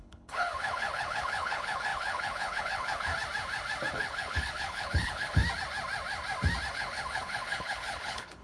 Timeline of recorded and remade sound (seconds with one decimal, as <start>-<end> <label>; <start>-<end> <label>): 0.0-3.1 remade; 3.1-3.9 recorded; 3.9-5.4 remade; 5.4-6.7 recorded; 6.7-8.4 remade